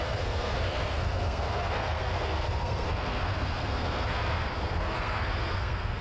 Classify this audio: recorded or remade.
remade